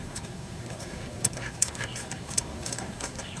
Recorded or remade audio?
remade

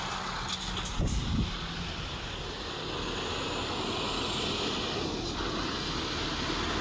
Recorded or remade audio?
recorded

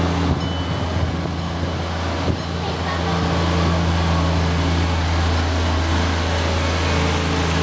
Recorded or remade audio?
recorded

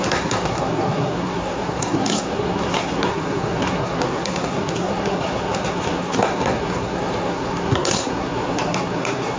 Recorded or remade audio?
remade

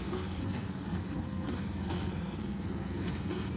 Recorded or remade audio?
remade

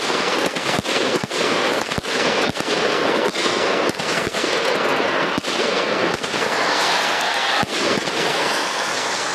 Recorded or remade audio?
remade